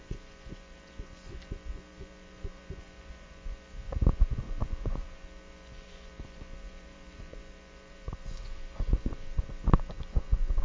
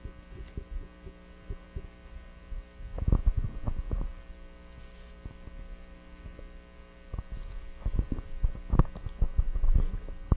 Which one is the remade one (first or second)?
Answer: first